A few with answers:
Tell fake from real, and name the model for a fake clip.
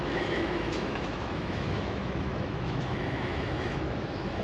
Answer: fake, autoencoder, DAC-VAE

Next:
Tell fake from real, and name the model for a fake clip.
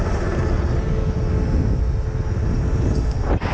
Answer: real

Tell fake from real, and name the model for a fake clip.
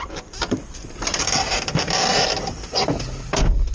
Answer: fake, vocoder, BigVGAN v2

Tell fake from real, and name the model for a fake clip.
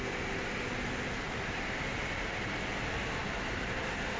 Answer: real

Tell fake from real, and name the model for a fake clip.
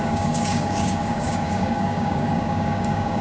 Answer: fake, codec, DAC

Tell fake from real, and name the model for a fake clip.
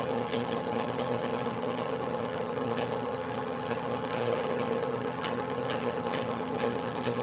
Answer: fake, vocoder, HiFi-GAN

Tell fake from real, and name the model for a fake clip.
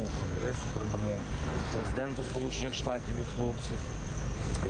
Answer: fake, codec, SNAC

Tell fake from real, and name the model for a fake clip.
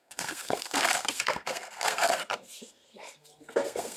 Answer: fake, codec, SNAC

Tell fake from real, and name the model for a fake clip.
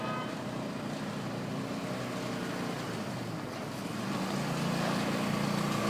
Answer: real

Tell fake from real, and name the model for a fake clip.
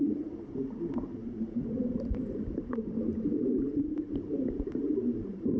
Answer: fake, vocoder, BigVGAN v2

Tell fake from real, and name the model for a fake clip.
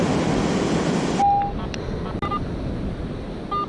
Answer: real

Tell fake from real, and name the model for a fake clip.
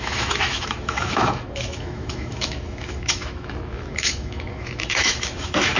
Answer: fake, autoencoder, DAC-VAE